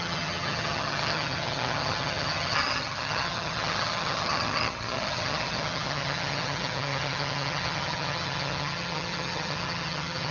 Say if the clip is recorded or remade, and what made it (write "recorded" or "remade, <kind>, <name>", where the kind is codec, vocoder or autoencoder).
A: remade, vocoder, HiFi-GAN